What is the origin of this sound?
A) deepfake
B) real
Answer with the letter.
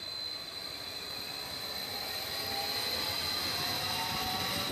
A